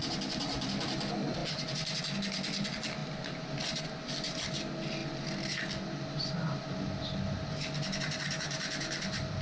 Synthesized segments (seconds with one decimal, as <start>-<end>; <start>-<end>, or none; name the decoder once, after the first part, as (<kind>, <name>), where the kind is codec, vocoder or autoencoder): 1.4-2.0 (vocoder, BigVGAN v2)